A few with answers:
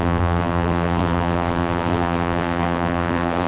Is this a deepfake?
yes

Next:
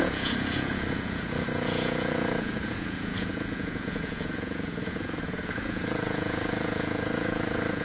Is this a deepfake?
yes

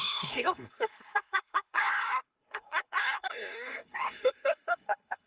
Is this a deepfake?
yes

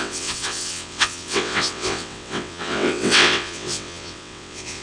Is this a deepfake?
yes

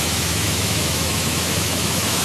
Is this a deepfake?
yes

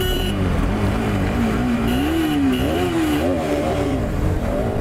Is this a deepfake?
yes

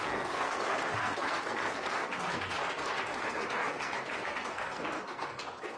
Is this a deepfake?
yes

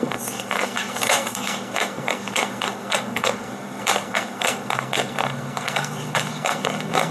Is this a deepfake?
yes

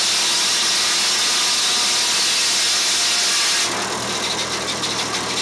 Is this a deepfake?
no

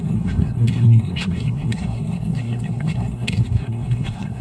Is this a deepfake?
yes